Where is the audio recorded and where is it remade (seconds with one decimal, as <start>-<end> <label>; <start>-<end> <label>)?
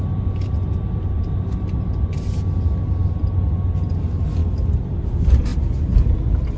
0.0-6.6 recorded